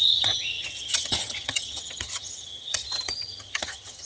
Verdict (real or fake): fake